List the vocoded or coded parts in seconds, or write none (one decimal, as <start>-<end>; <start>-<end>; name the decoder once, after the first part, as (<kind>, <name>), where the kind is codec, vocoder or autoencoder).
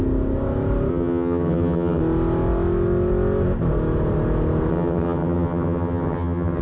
0.9-2.0 (vocoder, HiFi-GAN); 4.7-6.6